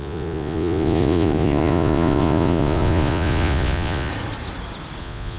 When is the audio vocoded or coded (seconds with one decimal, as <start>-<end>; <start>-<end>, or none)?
0.0-4.1; 5.0-5.4